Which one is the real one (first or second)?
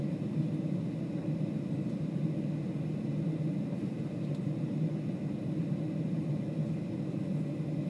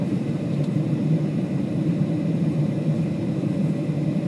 first